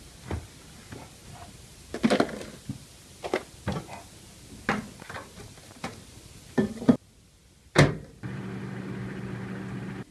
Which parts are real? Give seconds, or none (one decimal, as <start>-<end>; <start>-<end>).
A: 0.0-5.2; 6.2-10.1